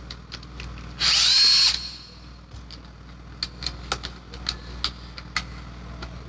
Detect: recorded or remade recorded